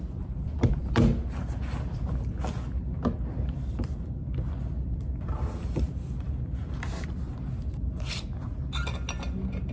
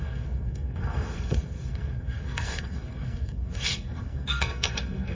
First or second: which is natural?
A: first